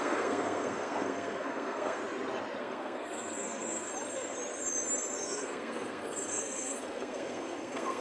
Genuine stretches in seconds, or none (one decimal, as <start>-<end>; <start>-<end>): 2.0-2.6; 3.9-5.2